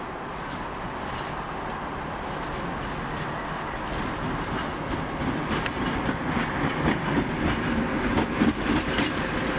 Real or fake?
real